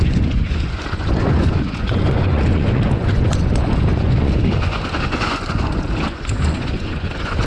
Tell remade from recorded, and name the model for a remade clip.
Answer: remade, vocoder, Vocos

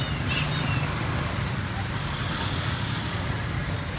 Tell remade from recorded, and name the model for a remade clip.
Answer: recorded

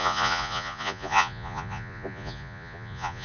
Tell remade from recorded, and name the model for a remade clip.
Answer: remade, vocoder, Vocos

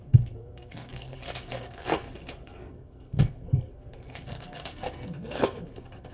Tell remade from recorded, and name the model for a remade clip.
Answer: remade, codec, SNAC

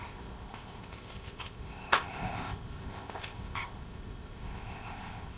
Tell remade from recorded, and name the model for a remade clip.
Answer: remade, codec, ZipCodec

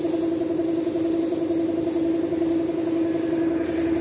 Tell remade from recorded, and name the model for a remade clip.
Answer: recorded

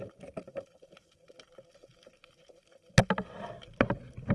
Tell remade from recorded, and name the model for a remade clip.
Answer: recorded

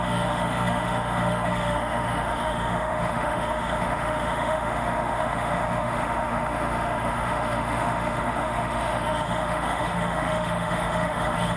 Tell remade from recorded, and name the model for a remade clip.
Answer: remade, autoencoder, DAC-VAE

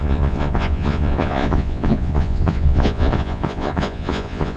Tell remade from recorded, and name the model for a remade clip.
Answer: remade, vocoder, Vocos